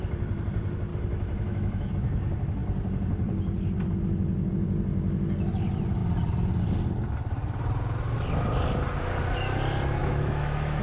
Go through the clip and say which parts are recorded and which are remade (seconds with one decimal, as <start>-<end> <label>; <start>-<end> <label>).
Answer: 0.0-0.9 recorded; 0.9-1.9 remade; 1.9-10.0 recorded; 10.0-10.8 remade